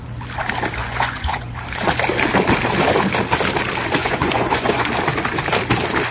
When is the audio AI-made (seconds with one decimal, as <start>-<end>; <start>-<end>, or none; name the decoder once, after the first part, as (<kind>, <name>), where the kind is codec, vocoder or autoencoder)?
0.8-1.5 (vocoder, Vocos); 4.0-4.9